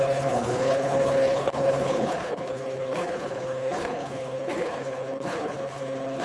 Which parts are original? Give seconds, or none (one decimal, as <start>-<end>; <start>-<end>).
none